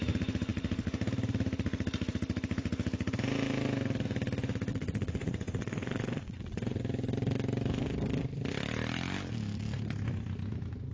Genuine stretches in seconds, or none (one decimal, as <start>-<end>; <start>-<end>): 0.0-4.7; 6.8-10.9

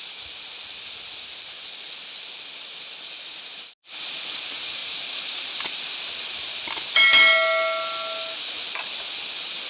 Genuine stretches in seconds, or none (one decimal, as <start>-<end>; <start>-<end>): 0.0-9.7

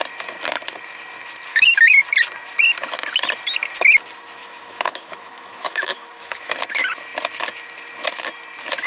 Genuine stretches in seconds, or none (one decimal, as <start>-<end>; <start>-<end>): 0.0-1.5; 2.0-4.4; 6.5-8.9

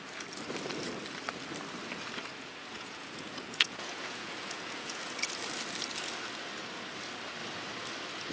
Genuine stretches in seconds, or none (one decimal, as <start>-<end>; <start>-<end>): 0.0-2.3; 5.2-8.3

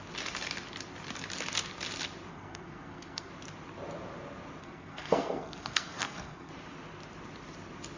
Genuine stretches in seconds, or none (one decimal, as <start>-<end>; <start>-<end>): 0.0-2.3; 3.3-4.6; 6.5-8.0

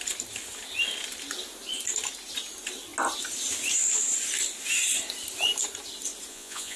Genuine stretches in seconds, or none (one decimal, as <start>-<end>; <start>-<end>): 0.0-6.3

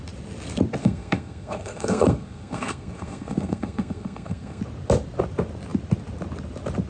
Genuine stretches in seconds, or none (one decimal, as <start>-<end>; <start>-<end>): 0.0-0.8; 4.6-6.9

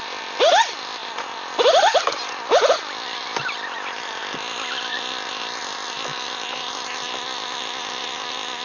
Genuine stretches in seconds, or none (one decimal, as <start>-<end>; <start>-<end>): 0.0-8.6